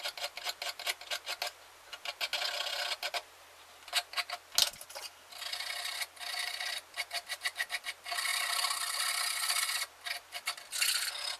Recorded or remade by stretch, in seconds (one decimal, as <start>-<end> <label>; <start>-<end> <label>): 0.0-11.4 recorded

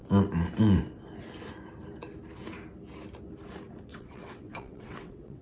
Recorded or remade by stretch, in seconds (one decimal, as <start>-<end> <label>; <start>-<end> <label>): 0.0-3.9 recorded; 3.9-5.4 remade

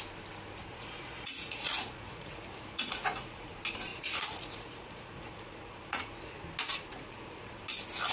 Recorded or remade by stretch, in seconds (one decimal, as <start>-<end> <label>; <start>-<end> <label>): 0.0-0.7 recorded; 0.7-3.5 remade; 3.5-3.9 recorded; 3.9-6.2 remade; 6.2-6.9 recorded; 6.9-7.6 remade; 7.6-8.1 recorded

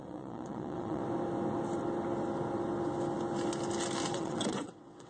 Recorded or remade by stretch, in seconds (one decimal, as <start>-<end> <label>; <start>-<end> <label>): 0.0-1.0 remade; 1.0-4.1 recorded; 4.1-5.1 remade

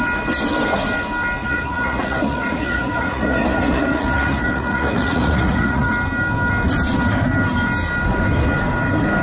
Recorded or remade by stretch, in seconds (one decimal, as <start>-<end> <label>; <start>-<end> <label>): 0.0-1.4 recorded; 1.4-5.9 remade; 5.9-9.2 recorded

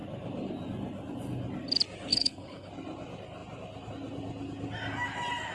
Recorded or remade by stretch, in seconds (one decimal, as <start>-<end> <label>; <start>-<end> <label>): 0.0-2.1 recorded; 2.1-2.7 remade; 2.7-5.5 recorded

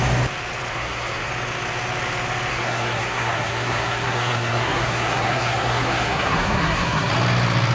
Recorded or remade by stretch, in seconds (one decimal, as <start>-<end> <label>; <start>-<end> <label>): 0.0-0.7 recorded; 0.7-1.3 remade; 1.3-2.5 recorded; 2.5-7.1 remade; 7.1-7.7 recorded

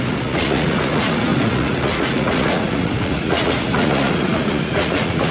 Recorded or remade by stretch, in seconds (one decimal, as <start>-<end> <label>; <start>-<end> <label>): 0.0-5.3 remade